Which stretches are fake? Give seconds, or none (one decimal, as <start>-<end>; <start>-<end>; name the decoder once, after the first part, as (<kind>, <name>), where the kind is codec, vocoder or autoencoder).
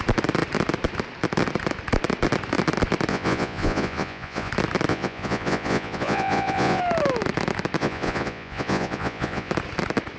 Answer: 3.1-4.5 (vocoder, Vocos); 4.9-6.8; 7.8-9.5